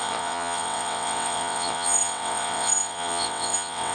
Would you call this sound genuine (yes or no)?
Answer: no